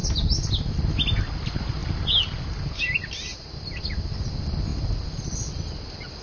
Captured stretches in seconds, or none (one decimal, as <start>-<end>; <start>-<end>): 0.0-6.2